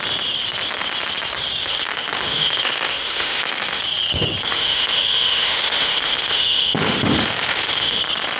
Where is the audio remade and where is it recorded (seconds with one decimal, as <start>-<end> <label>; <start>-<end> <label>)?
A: 0.0-1.6 recorded; 1.6-3.8 remade; 3.8-4.4 recorded; 4.4-8.0 remade; 8.0-8.4 recorded